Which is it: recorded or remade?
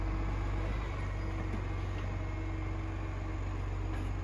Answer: recorded